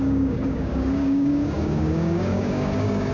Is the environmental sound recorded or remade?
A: remade